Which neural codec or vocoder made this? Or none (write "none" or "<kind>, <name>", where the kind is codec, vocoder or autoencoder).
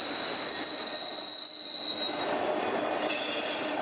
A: none